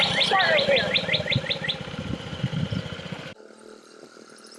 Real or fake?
real